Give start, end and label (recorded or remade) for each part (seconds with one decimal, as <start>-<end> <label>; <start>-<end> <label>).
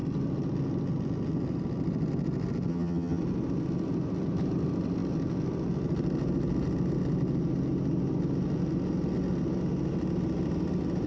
0.0-2.7 recorded; 2.7-3.2 remade; 3.2-11.1 recorded